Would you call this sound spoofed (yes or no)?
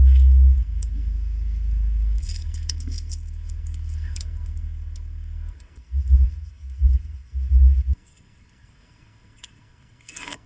yes